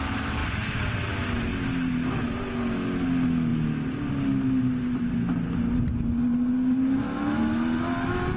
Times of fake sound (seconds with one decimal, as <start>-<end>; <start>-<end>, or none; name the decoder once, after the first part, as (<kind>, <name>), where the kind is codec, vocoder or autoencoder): none